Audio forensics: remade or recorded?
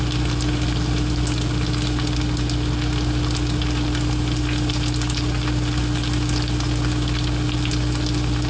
recorded